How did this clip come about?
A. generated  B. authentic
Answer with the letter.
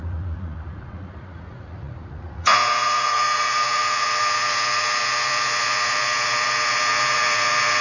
A